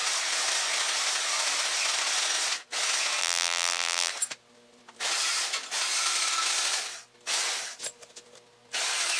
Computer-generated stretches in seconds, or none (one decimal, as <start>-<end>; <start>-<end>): 3.2-4.1